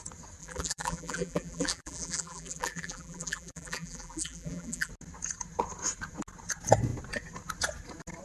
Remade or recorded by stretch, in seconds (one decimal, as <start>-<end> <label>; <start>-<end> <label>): 0.0-0.4 recorded; 0.4-4.9 remade; 4.9-8.2 recorded